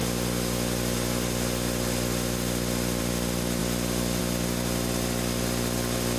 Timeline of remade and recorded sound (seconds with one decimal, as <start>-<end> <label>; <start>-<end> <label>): 0.0-6.2 recorded